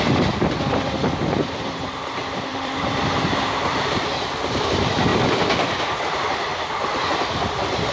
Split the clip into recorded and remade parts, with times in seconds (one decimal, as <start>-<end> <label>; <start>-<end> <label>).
0.0-5.1 remade; 5.1-6.0 recorded; 6.0-7.9 remade